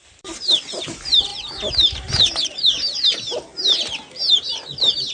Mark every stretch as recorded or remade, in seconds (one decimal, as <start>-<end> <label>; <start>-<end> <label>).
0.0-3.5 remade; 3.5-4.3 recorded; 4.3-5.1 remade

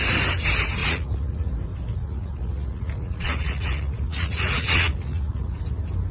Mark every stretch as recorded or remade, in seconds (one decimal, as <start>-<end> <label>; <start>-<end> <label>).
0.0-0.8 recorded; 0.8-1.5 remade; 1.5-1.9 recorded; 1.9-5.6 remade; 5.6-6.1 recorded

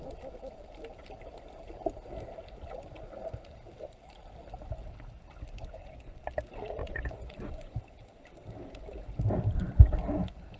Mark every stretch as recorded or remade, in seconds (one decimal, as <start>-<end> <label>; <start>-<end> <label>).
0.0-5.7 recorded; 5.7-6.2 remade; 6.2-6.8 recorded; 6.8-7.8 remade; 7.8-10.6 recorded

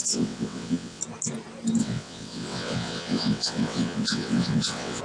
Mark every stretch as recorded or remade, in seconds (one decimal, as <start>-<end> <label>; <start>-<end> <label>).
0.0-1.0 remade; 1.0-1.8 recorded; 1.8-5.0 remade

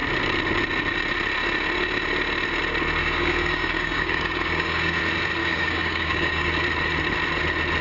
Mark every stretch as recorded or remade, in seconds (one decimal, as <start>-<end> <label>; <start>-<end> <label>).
0.0-3.0 recorded; 3.0-5.0 remade; 5.0-5.4 recorded; 5.4-6.5 remade; 6.5-7.8 recorded

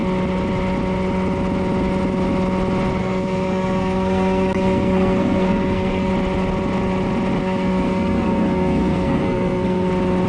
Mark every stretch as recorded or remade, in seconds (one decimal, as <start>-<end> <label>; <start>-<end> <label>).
0.0-3.0 recorded; 3.0-6.1 remade; 6.1-7.4 recorded; 7.4-9.9 remade; 9.9-10.3 recorded